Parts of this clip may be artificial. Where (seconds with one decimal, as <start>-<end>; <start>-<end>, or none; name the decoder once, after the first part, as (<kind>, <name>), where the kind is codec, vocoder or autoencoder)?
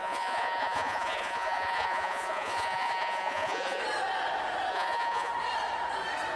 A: 0.0-3.8 (vocoder, Vocos); 4.7-5.3